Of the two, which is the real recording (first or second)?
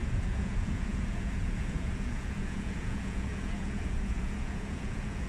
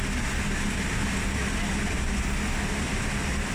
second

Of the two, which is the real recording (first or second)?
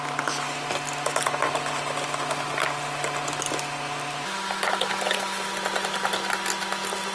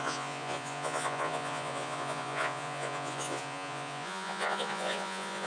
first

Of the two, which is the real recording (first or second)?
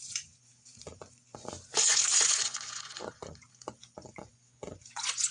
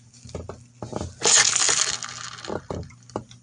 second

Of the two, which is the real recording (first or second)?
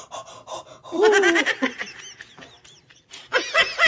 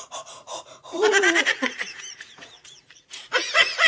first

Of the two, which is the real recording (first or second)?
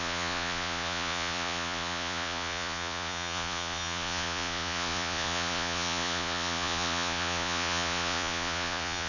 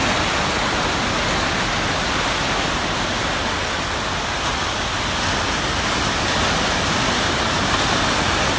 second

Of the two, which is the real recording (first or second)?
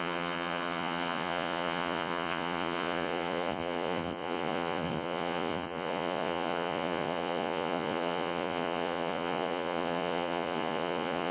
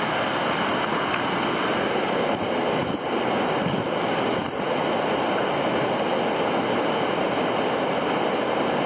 second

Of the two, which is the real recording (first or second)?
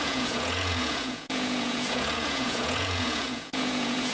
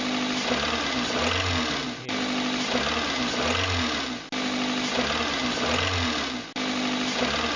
second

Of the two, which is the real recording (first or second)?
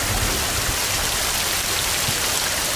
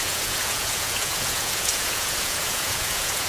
first